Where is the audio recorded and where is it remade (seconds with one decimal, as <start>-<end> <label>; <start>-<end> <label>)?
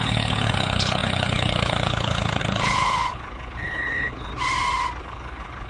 0.0-4.3 remade; 4.3-5.0 recorded; 5.0-5.7 remade